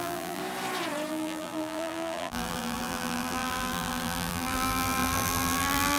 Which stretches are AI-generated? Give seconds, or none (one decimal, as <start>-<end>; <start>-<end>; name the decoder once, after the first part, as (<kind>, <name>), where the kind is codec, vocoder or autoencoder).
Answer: 0.0-0.4 (vocoder, BigVGAN v2); 1.1-6.0